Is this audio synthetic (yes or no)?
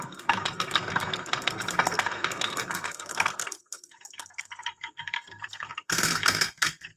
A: yes